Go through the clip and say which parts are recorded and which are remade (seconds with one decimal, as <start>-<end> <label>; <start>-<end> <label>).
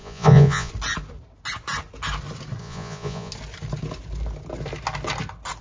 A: 0.0-0.7 remade; 0.7-2.6 recorded; 2.6-3.3 remade; 3.3-5.6 recorded